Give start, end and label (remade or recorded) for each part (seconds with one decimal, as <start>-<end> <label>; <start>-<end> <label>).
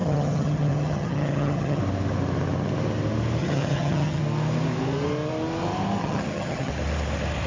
0.0-1.8 remade; 1.8-3.4 recorded; 3.4-4.2 remade; 4.2-6.0 recorded; 6.0-6.7 remade; 6.7-7.5 recorded